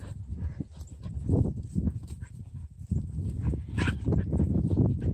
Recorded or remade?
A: remade